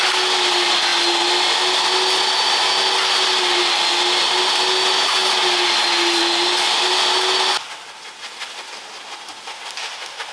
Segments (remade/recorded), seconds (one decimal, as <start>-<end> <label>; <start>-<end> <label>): 0.0-10.3 recorded